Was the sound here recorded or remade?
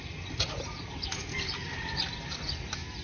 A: recorded